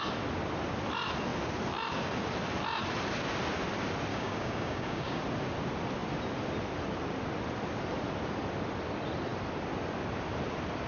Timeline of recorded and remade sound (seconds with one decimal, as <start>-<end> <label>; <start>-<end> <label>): 0.0-4.1 recorded; 4.1-5.2 remade; 5.2-10.9 recorded